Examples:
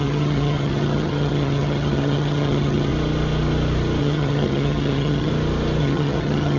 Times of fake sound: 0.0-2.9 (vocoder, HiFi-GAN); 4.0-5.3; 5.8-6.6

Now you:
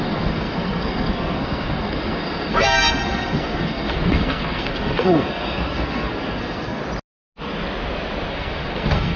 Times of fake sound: 0.0-6.8 (codec, SNAC); 8.3-9.2

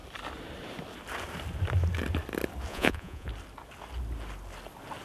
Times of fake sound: 2.7-3.3 (vocoder, Vocos)

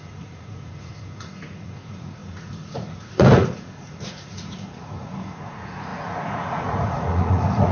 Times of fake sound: 0.0-7.7 (vocoder, Vocos)

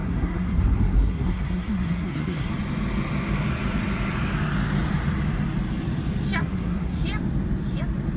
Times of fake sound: 0.0-2.5 (codec, SNAC); 6.4-7.0

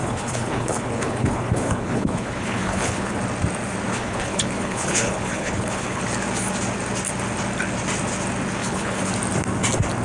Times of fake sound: 0.0-3.2 (codec, HILCodec); 3.9-6.0; 8.6-9.1

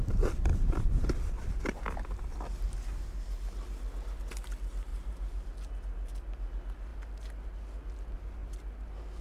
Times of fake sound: 0.5-1.5 (vocoder, BigVGAN v2); 4.9-5.5

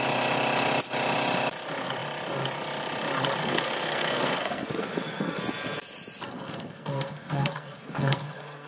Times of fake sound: 3.4-5.4 (codec, SNAC); 6.3-8.7